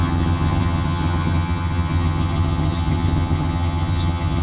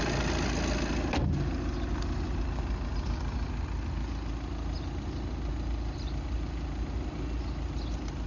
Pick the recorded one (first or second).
second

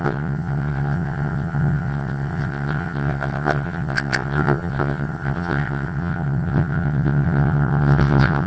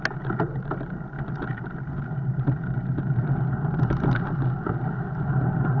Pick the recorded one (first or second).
second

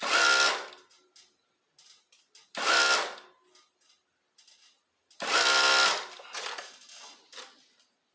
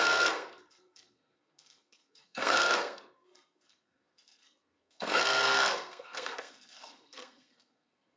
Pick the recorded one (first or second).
first